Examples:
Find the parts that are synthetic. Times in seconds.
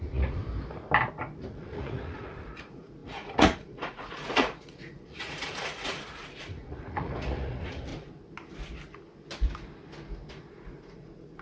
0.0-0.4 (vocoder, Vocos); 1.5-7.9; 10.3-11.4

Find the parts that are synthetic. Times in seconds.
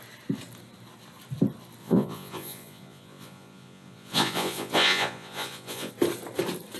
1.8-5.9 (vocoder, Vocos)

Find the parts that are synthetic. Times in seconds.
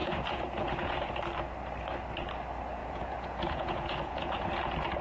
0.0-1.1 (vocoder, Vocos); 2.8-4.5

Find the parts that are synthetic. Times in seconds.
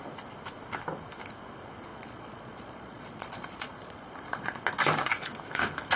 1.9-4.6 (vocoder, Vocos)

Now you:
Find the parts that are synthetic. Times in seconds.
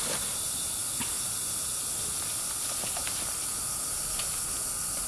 none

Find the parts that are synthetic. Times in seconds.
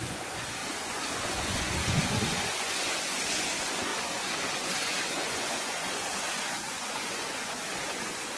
0.0-8.4 (vocoder, Vocos)